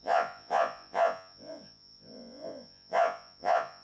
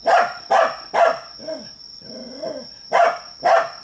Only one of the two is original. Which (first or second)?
second